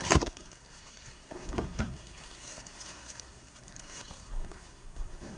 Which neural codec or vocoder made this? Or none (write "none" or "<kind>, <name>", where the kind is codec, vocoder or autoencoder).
codec, SNAC